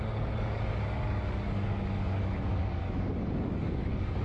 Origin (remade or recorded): remade